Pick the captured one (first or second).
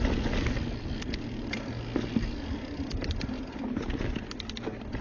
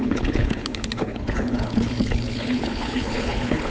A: first